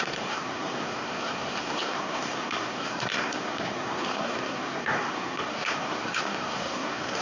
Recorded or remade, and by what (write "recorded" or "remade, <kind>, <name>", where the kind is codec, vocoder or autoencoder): remade, codec, SNAC